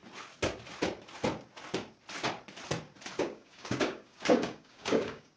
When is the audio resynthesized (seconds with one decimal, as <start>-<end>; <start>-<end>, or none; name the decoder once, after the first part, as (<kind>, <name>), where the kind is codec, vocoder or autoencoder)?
3.2-5.4 (codec, DAC)